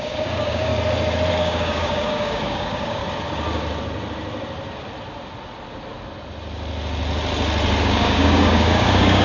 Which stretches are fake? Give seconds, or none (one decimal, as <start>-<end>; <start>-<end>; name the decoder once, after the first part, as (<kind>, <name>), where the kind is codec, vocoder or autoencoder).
0.0-0.7 (codec, DAC); 1.3-3.0; 7.8-9.2